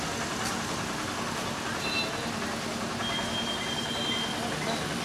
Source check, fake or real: real